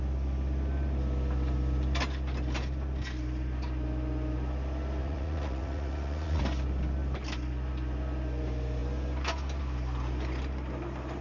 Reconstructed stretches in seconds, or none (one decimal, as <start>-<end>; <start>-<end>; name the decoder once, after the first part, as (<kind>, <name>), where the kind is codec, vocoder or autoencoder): 5.0-6.4 (vocoder, Vocos)